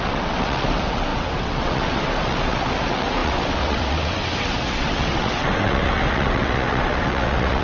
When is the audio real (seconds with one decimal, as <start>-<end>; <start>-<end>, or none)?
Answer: none